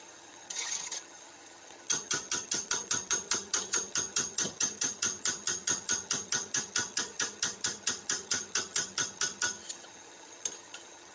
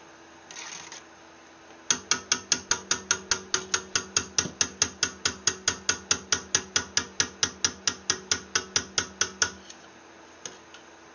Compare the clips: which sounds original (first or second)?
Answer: second